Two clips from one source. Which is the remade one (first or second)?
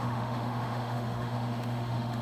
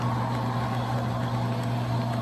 first